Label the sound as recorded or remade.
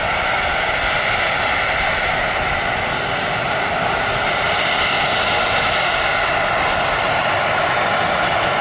remade